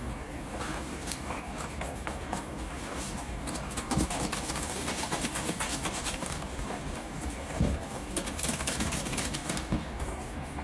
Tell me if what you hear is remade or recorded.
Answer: remade